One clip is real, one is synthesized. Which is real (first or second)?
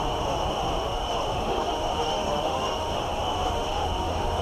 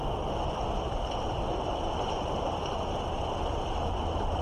second